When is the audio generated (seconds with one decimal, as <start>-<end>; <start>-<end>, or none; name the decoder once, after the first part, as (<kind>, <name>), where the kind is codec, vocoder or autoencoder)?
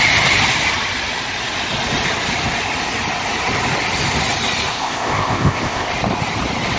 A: 4.7-5.9 (codec, ZipCodec)